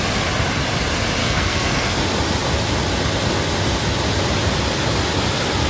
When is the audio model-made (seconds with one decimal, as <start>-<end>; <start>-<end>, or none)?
1.2-2.0